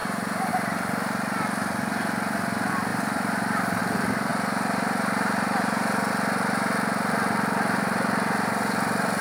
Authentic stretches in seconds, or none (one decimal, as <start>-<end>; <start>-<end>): 0.5-2.9; 3.8-4.3; 6.1-9.2